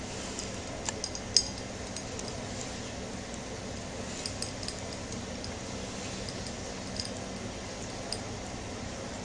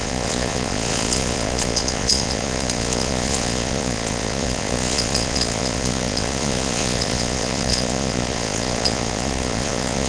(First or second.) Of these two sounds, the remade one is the second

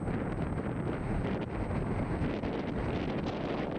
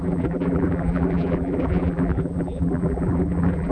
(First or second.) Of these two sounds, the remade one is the second